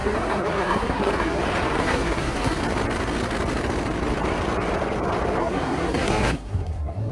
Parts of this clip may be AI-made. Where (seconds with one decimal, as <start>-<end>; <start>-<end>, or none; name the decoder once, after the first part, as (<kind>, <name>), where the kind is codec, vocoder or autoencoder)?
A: 0.0-1.4 (codec, SNAC); 1.8-2.6; 5.4-7.1